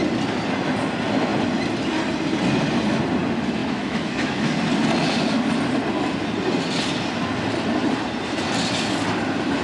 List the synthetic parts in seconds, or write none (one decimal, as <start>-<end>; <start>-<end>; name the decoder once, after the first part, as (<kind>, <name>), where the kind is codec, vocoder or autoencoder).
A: 3.6-4.5 (autoencoder, DAC-VAE)